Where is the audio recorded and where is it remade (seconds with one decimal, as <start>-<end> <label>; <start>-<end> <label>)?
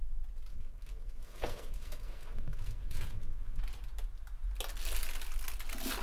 0.0-0.5 recorded; 0.5-3.6 remade; 3.6-6.0 recorded